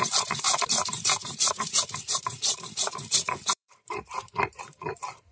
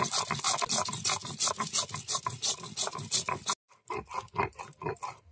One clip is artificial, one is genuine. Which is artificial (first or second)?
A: first